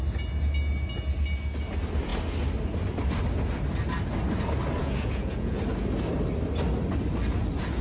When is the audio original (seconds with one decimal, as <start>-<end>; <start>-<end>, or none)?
0.0-4.8; 5.6-7.8